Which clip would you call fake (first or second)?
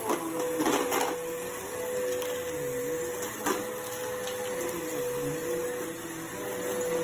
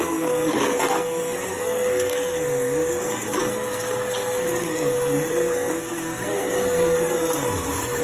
second